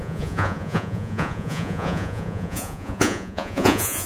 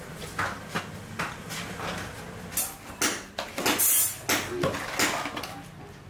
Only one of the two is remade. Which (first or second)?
first